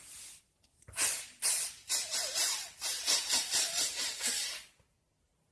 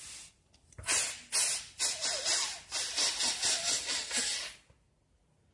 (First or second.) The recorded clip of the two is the second